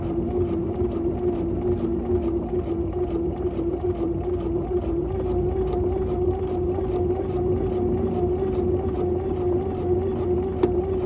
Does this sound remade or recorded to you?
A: recorded